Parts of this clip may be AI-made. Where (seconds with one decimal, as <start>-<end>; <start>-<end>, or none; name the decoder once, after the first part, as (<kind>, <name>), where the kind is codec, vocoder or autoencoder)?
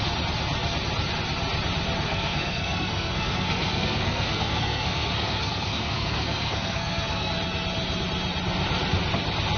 2.1-7.3 (codec, SNAC)